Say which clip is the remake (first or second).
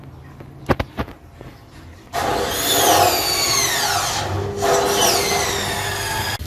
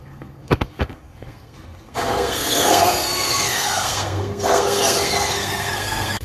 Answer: second